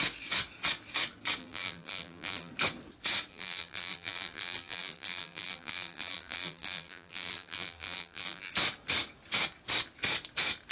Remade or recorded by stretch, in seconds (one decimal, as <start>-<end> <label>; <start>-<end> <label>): 0.0-1.4 recorded; 1.4-2.5 remade; 2.5-3.3 recorded; 3.3-8.5 remade; 8.5-10.7 recorded